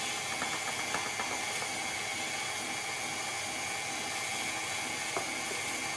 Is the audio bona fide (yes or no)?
yes